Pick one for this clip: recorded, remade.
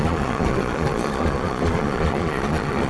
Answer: remade